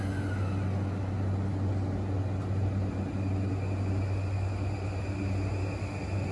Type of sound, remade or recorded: recorded